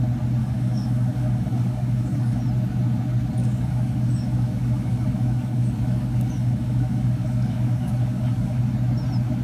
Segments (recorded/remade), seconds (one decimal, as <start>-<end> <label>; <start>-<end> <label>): 0.0-0.4 recorded; 0.4-2.4 remade; 2.4-3.4 recorded; 3.4-8.6 remade; 8.6-9.4 recorded